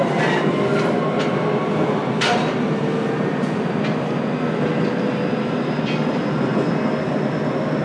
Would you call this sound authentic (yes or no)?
yes